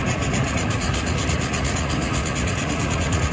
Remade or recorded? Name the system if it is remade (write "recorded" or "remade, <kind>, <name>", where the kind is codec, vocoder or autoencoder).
remade, vocoder, Vocos